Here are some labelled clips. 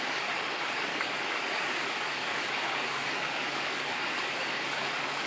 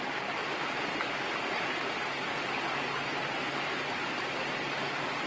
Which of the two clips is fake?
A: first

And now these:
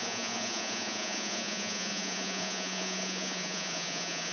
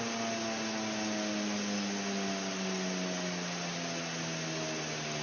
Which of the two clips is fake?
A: first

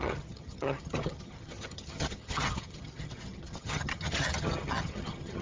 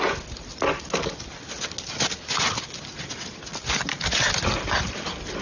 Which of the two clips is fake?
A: first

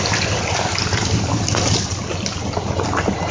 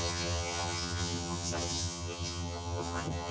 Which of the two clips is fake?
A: second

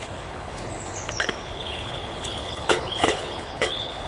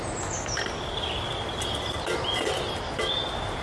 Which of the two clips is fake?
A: first